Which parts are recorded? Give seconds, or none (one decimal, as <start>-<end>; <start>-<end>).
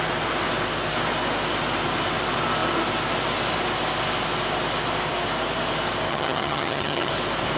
0.0-6.1; 7.1-7.6